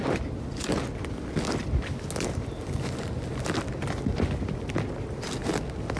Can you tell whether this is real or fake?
real